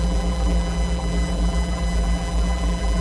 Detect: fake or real fake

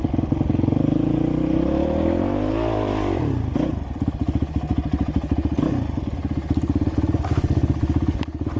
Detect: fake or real real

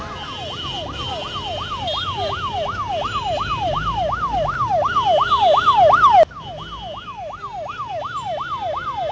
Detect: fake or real real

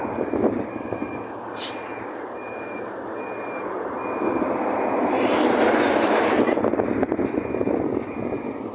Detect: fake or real real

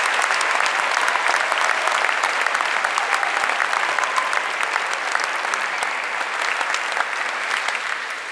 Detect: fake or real real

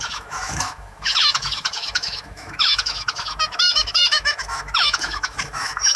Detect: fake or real fake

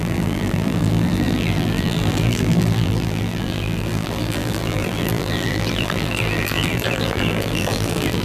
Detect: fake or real fake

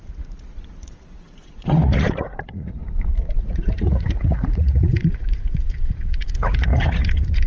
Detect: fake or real fake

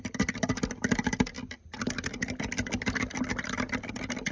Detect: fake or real real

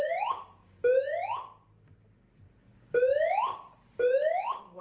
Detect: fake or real real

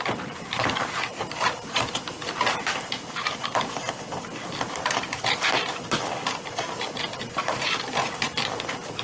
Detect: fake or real fake